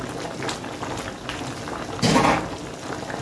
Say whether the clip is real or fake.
real